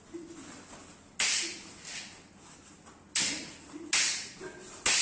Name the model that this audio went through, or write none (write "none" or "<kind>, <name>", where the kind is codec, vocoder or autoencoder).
none